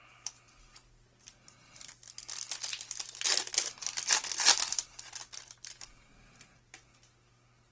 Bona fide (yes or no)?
yes